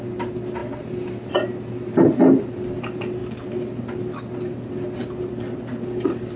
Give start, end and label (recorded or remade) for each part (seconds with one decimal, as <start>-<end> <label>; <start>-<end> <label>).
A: 0.0-6.4 recorded